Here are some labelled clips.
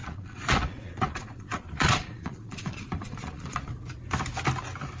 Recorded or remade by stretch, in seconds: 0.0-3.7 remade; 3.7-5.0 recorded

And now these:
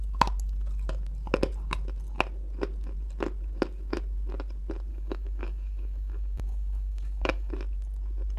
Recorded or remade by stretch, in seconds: 0.0-4.9 recorded; 4.9-7.5 remade; 7.5-8.4 recorded

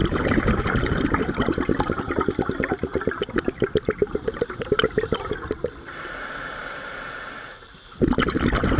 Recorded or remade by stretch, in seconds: 0.0-8.8 recorded

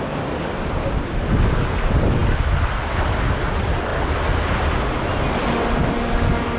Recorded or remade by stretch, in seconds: 0.0-6.6 recorded

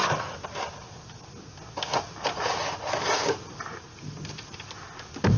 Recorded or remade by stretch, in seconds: 0.0-5.4 recorded

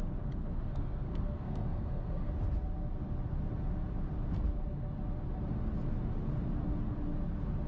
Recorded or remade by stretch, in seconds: 0.0-0.4 recorded; 0.4-2.3 remade; 2.3-7.7 recorded

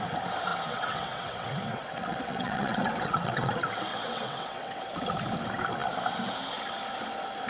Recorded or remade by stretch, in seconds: 0.0-0.5 recorded; 0.5-3.5 remade; 3.5-3.9 recorded; 3.9-4.9 remade; 4.9-7.5 recorded